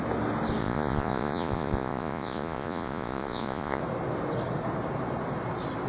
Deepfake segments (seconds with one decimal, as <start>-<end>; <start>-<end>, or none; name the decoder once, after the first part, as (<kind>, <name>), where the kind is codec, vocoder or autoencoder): 0.6-3.8 (vocoder, Vocos)